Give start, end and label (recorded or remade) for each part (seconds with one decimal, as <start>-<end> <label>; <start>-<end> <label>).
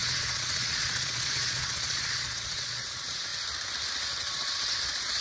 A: 0.0-3.3 remade; 3.3-4.2 recorded; 4.2-5.2 remade